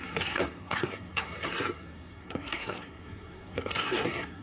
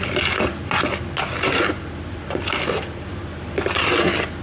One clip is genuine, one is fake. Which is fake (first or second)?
first